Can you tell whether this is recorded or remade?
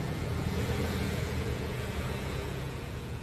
remade